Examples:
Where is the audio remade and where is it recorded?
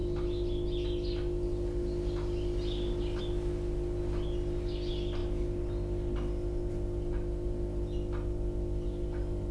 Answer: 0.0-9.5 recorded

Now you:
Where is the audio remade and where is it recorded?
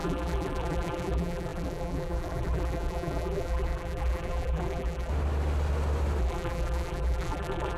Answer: 0.0-5.1 remade; 5.1-6.2 recorded; 6.2-7.8 remade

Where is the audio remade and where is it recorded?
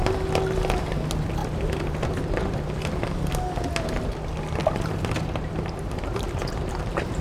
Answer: 0.0-1.4 recorded; 1.4-2.7 remade; 2.7-4.6 recorded; 4.6-6.8 remade; 6.8-7.2 recorded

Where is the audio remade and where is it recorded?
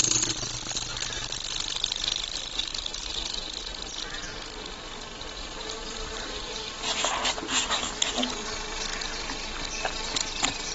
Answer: 0.0-2.7 recorded; 2.7-3.6 remade; 3.6-10.7 recorded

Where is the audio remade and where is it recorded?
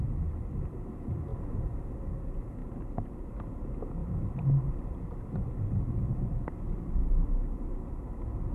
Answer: 0.0-1.3 recorded; 1.3-2.0 remade; 2.0-2.6 recorded; 2.6-3.3 remade; 3.3-4.0 recorded; 4.0-8.1 remade; 8.1-8.5 recorded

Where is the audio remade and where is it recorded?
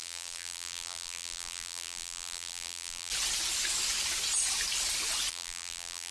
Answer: 0.0-3.1 remade; 3.1-5.3 recorded; 5.3-6.1 remade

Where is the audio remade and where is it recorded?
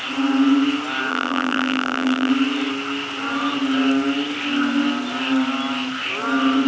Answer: 0.0-1.1 recorded; 1.1-2.3 remade; 2.3-6.7 recorded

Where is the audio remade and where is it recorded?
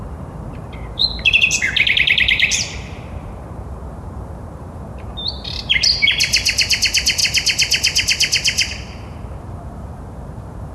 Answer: 0.0-10.7 remade